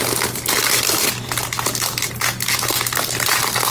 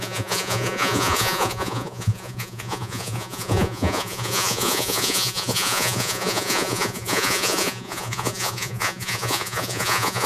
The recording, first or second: first